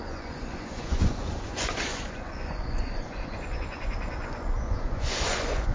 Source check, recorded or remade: remade